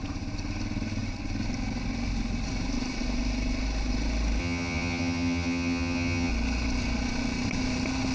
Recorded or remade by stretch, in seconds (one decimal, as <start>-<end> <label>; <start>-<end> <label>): 0.0-4.4 recorded; 4.4-6.3 remade; 6.3-8.1 recorded